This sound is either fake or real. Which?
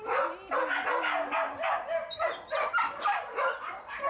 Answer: real